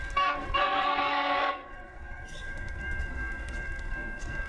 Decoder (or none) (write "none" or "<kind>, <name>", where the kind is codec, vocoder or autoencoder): codec, SNAC